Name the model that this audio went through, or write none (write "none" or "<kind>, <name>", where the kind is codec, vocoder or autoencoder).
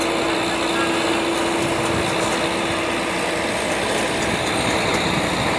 none